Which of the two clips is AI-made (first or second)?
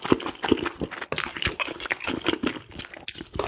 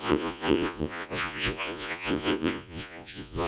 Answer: second